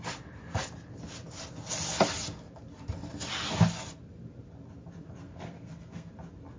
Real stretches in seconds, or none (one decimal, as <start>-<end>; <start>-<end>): 0.0-5.2; 6.1-6.6